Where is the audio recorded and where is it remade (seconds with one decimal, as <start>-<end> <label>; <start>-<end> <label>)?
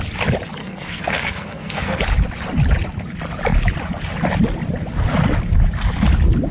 0.0-0.6 recorded; 0.6-2.0 remade; 2.0-6.5 recorded